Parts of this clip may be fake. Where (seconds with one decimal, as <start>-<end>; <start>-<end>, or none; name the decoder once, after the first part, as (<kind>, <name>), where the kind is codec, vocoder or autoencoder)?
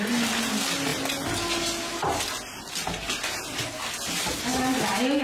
none